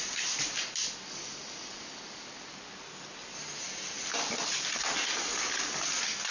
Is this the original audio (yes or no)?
yes